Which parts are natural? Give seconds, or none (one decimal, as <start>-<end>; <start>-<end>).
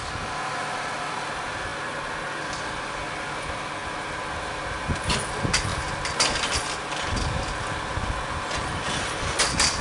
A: 0.0-9.8